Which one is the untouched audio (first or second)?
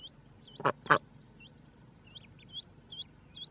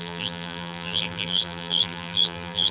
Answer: first